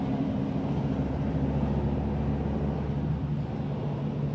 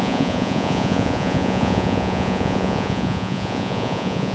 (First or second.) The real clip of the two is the first